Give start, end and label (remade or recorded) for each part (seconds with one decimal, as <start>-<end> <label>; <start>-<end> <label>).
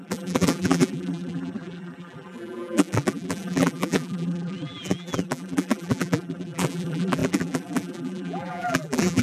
0.0-9.2 remade